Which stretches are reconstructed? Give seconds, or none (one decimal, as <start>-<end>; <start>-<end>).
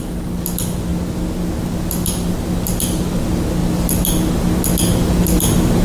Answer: none